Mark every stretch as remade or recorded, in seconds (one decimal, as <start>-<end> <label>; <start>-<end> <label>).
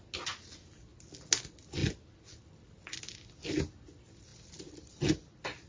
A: 0.0-5.7 recorded